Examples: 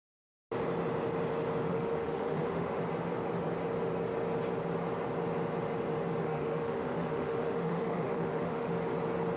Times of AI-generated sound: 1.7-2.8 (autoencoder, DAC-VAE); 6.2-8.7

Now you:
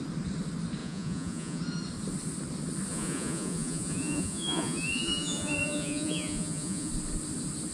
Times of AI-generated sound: 0.8-1.6 (vocoder, Vocos); 2.9-6.9

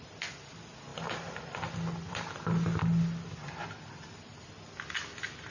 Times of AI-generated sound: none

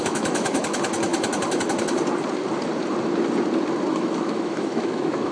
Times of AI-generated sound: 0.0-0.6 (autoencoder, DAC-VAE); 3.9-5.3

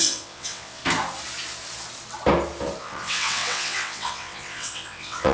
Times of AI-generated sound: 0.0-0.8 (vocoder, WaveNeXt); 2.8-5.3

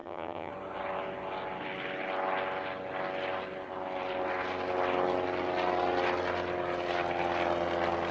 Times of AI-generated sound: 0.0-0.5 (vocoder, HiFi-GAN)

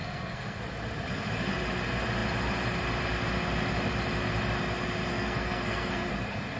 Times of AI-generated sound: 0.0-0.6 (codec, SNAC); 5.1-6.1

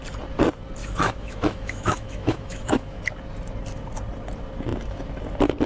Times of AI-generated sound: 0.8-3.0 (autoencoder, DAC-VAE)